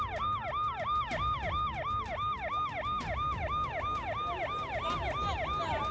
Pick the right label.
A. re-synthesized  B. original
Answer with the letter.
B